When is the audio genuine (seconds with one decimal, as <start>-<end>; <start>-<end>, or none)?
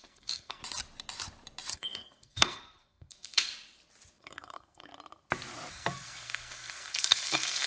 0.6-1.7; 3.5-4.2; 4.9-5.7